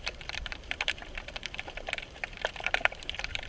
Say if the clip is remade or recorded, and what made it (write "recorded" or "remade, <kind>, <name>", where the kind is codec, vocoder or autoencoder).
remade, vocoder, BigVGAN v2